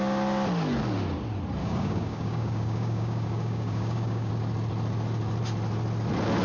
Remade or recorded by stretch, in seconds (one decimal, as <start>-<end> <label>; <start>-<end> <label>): 0.0-1.6 recorded; 1.6-4.3 remade; 4.3-6.4 recorded